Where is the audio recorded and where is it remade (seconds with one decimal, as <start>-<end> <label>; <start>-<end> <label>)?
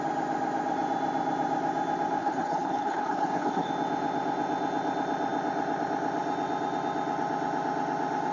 0.0-2.2 recorded; 2.2-3.7 remade; 3.7-8.3 recorded